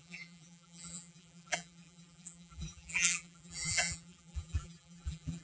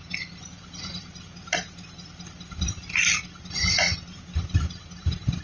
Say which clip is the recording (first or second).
second